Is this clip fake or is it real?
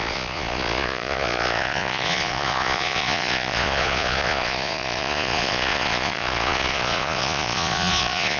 fake